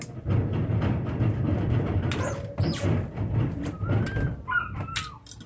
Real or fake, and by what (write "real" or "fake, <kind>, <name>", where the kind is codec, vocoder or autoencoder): real